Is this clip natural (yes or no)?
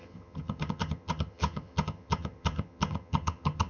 no